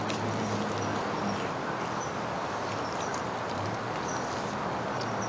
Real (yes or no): yes